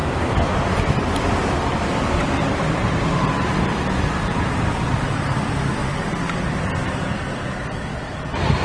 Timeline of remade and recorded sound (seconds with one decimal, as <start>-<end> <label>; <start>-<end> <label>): 0.0-5.8 remade; 5.8-7.0 recorded; 7.0-8.6 remade